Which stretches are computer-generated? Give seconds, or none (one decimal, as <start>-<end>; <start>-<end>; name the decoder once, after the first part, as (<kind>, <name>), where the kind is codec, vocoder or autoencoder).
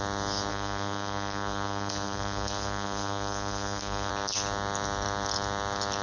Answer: 0.5-4.1 (codec, SNAC)